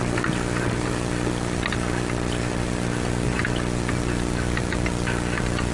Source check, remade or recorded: recorded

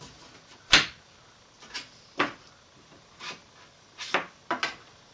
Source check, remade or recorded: recorded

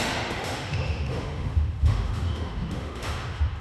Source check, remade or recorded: remade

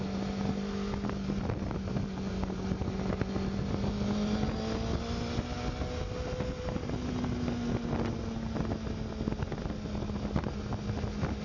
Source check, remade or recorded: recorded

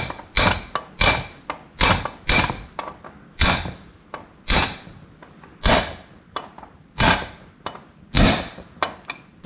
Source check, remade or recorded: recorded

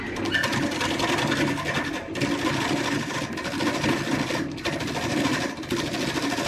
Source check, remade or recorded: recorded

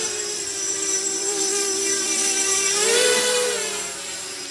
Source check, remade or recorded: remade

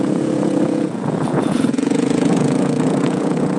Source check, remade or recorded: remade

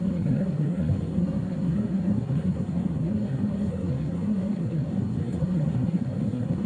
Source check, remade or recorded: remade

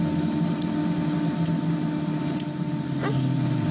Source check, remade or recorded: recorded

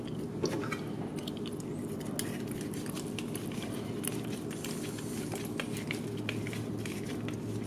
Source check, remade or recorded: recorded